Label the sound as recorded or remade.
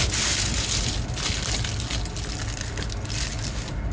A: recorded